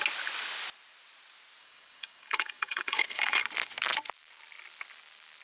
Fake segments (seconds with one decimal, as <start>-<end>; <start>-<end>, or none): 1.6-3.4